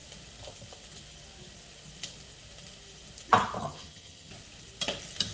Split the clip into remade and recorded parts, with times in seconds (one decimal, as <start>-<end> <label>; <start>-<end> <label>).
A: 0.0-3.6 recorded; 3.6-4.3 remade; 4.3-5.3 recorded

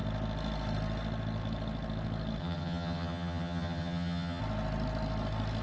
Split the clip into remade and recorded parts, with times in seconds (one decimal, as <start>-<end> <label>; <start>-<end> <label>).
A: 0.0-2.4 recorded; 2.4-4.4 remade; 4.4-5.6 recorded

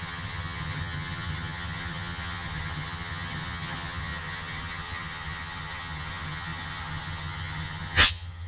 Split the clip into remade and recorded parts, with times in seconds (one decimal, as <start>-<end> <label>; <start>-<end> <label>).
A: 0.0-8.5 remade

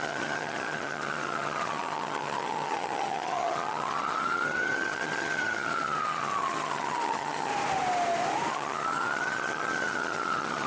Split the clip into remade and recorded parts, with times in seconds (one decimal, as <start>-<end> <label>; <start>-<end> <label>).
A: 0.0-7.5 remade; 7.5-8.5 recorded; 8.5-10.7 remade

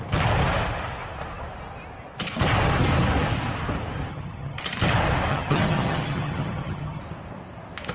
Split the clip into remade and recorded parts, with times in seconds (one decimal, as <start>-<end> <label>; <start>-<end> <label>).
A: 0.0-4.1 recorded; 4.1-4.6 remade; 4.6-5.3 recorded; 5.3-7.0 remade; 7.0-7.9 recorded

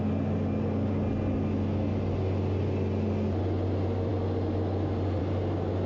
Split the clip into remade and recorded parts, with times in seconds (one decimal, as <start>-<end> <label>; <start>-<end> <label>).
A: 0.0-5.9 recorded

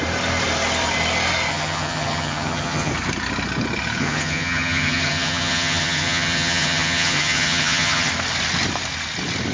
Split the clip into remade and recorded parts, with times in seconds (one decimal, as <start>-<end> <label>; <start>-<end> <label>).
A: 0.0-1.5 recorded; 1.5-2.9 remade; 2.9-4.0 recorded; 4.0-8.1 remade; 8.1-9.5 recorded